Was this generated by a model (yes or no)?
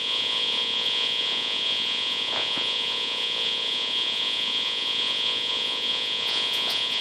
yes